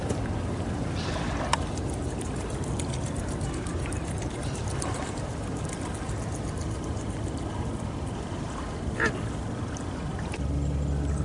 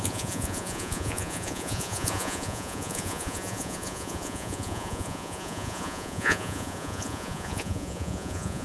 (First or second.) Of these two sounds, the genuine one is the first